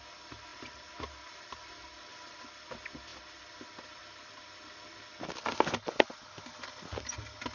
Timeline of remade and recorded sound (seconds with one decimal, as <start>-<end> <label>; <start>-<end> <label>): 0.0-0.5 recorded; 0.5-1.7 remade; 1.7-2.1 recorded; 2.1-2.6 remade; 2.6-7.5 recorded